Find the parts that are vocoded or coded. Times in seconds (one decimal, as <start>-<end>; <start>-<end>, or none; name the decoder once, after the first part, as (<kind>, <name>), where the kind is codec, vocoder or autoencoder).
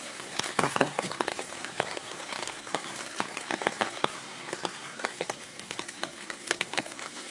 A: 0.0-7.3 (codec, SNAC)